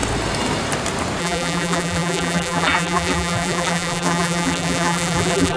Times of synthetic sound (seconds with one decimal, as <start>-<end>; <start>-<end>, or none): 1.2-5.6